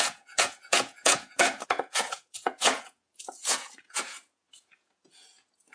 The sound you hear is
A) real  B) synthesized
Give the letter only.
B